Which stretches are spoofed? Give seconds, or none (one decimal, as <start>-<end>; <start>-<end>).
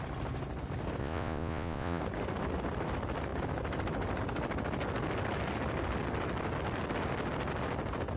1.0-2.0